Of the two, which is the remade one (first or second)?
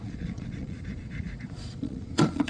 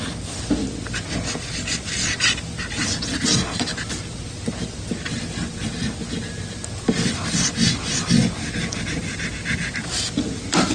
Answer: first